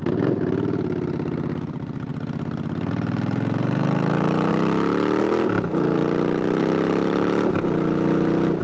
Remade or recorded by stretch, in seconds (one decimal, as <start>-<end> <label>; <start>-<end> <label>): 0.0-2.1 remade; 2.1-2.9 recorded; 2.9-4.5 remade; 4.5-5.2 recorded; 5.2-6.0 remade; 6.0-6.6 recorded; 6.6-8.6 remade